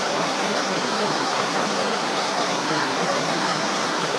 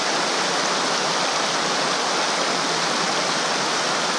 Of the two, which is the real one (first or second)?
second